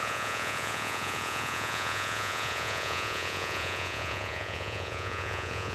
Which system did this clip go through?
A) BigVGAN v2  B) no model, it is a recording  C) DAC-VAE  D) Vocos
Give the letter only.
D